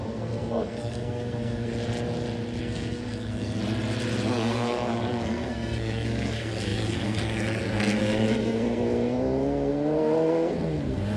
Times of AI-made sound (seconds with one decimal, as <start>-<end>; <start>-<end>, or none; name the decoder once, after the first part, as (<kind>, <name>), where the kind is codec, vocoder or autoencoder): 0.0-1.7 (codec, SNAC); 2.6-3.6; 4.3-11.2